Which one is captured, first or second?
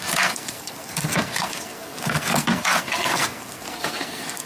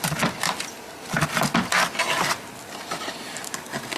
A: second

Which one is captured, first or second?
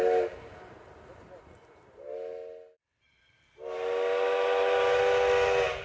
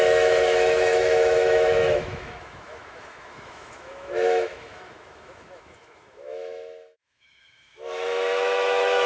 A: first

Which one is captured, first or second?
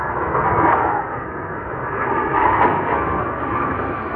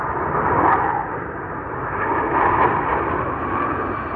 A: second